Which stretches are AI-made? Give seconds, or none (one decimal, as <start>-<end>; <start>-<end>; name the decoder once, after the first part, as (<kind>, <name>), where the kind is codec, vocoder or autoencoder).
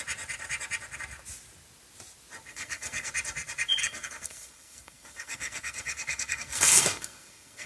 2.5-3.1 (codec, SNAC); 3.8-7.7